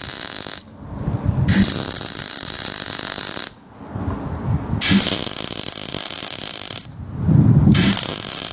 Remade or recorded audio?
recorded